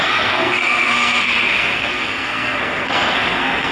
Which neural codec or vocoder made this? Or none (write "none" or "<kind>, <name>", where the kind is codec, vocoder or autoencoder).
codec, SNAC